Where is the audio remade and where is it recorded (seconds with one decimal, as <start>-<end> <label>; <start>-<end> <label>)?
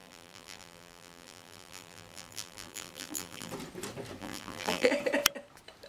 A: 0.0-3.5 remade; 3.5-4.2 recorded; 4.2-4.9 remade; 4.9-5.9 recorded